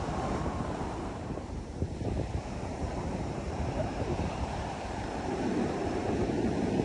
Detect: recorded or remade remade